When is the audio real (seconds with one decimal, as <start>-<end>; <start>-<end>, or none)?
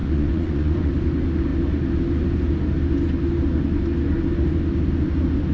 0.9-5.5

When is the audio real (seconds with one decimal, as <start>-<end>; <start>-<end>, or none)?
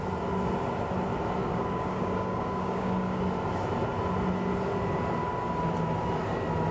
0.0-1.4; 3.2-6.7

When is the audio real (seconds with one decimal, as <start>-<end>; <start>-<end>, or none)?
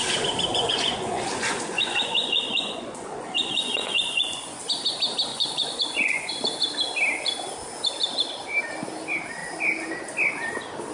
0.0-0.5; 4.6-5.3; 6.3-10.9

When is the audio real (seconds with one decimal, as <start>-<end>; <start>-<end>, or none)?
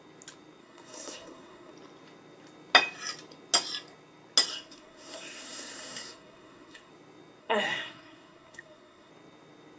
0.0-0.6; 1.7-4.5; 6.9-7.4; 9.1-9.8